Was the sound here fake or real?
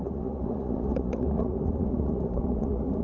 fake